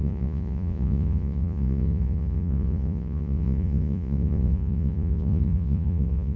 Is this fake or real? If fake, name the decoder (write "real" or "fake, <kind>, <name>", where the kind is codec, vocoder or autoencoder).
fake, vocoder, Vocos